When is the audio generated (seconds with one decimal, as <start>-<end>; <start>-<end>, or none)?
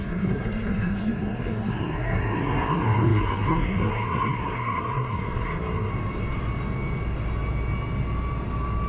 0.0-5.9